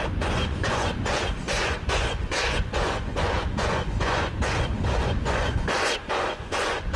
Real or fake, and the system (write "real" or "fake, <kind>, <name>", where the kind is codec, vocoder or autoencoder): fake, vocoder, Vocos